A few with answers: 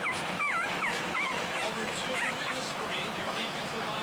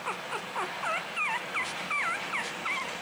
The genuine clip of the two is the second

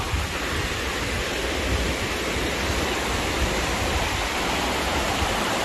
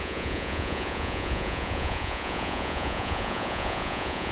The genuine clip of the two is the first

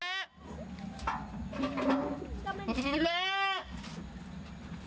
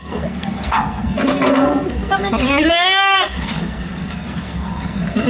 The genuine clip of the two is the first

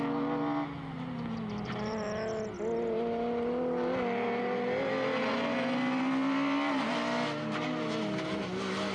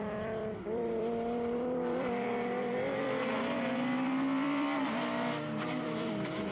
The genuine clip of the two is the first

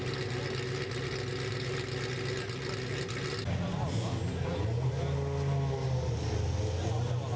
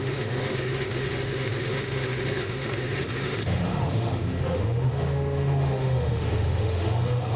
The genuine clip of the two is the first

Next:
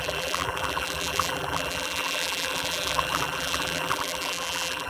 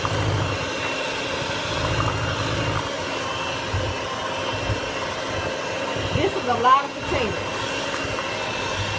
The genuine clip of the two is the second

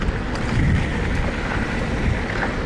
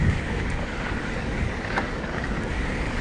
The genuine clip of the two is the first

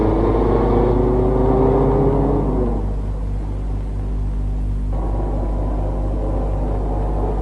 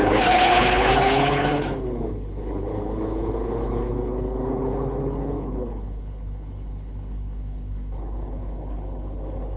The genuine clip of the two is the first